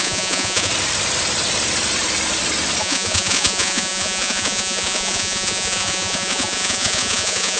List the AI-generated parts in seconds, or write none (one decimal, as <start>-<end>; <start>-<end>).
0.0-0.7; 2.8-7.6